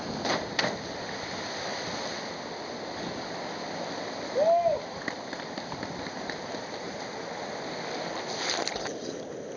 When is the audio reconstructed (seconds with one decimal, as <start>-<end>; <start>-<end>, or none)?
none